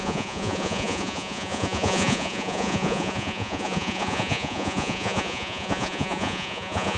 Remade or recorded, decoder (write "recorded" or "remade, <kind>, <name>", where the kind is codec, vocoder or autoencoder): remade, vocoder, Vocos